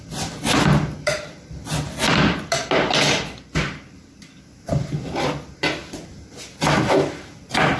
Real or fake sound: real